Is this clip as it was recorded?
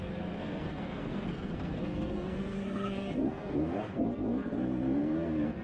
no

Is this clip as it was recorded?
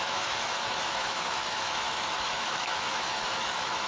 no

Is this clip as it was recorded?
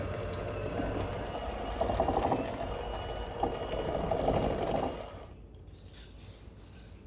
yes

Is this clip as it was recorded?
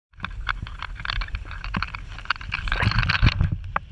no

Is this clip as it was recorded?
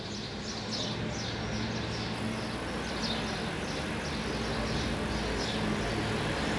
yes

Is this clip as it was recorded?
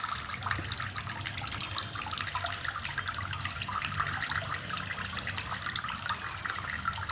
yes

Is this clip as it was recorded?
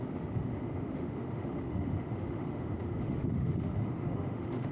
no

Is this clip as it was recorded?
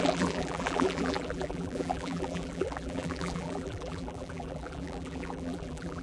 no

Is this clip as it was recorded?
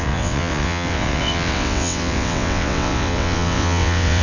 no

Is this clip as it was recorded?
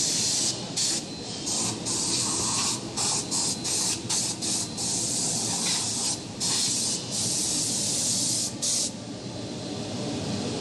yes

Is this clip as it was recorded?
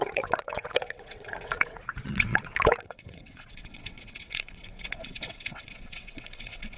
no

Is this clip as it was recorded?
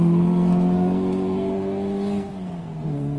no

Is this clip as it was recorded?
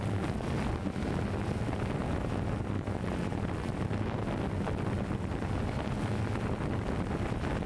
yes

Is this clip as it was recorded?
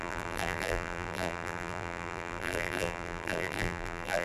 no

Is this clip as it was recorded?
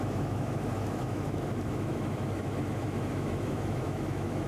no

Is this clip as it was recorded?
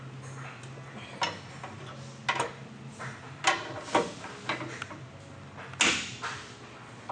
yes